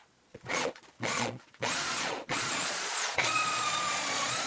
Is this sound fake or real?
fake